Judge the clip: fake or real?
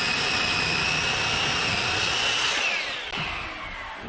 real